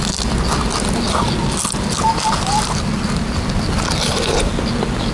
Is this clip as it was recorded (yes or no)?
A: yes